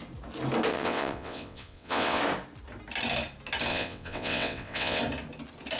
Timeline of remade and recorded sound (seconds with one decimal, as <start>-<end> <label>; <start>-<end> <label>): 0.0-0.7 recorded; 0.7-2.2 remade; 2.2-3.7 recorded; 3.7-5.0 remade; 5.0-5.8 recorded